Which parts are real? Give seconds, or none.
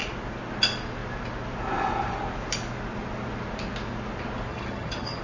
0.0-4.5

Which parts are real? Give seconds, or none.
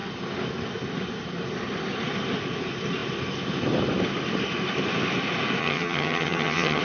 0.0-5.6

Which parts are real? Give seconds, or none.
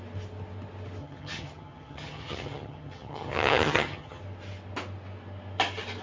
0.0-1.0; 4.2-6.0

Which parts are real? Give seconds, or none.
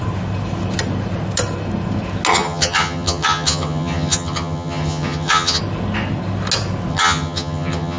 0.0-2.3; 5.6-6.9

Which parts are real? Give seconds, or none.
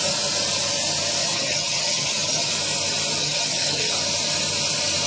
0.0-1.2; 2.5-3.2; 3.9-5.1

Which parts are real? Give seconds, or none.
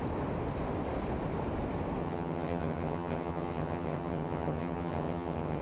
0.0-2.0